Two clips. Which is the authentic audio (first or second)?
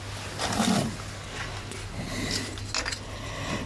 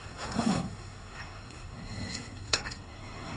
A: first